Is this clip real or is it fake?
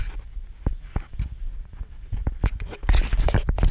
real